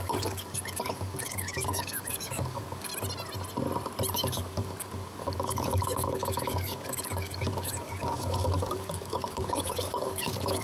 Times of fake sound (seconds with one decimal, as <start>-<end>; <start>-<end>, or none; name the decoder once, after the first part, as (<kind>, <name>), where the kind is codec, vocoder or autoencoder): 0.0-2.9 (codec, DAC); 4.1-10.6